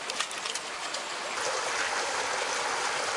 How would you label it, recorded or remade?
recorded